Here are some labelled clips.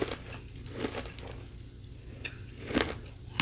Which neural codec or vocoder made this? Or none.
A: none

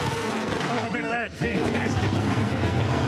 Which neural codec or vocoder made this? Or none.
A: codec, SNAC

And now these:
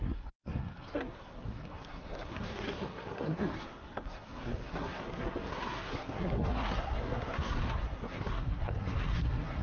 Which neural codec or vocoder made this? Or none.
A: codec, SNAC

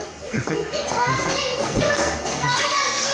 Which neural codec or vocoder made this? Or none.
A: codec, SNAC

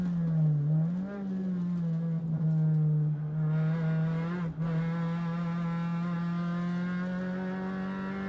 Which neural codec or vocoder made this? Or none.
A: none